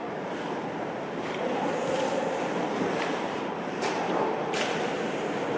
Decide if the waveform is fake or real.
fake